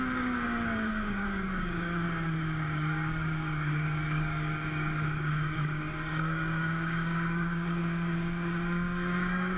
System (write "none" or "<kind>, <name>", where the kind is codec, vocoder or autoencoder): codec, DAC